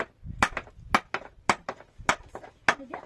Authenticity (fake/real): fake